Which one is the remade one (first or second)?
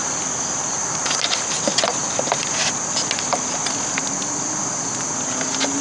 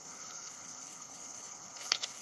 second